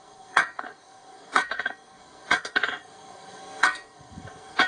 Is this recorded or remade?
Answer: remade